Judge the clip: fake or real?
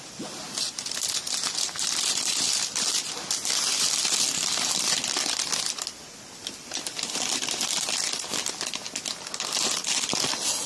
real